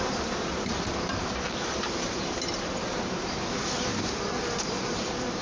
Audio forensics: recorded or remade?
remade